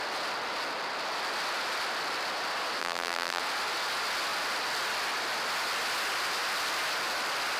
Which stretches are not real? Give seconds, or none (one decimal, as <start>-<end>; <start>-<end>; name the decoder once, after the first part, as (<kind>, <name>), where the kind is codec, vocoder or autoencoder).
2.8-3.4 (vocoder, BigVGAN v2)